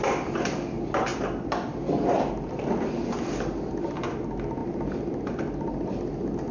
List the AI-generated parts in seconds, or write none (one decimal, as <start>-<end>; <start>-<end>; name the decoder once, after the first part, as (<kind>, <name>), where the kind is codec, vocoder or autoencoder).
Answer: none